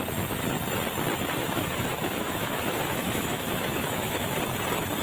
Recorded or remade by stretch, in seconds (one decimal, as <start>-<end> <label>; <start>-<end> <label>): 0.0-1.4 recorded; 1.4-4.4 remade; 4.4-5.0 recorded